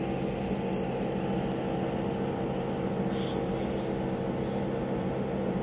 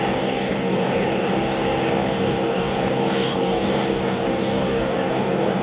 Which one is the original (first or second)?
first